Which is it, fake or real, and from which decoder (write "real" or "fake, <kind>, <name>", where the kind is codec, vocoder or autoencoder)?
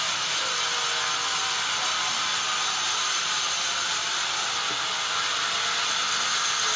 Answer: real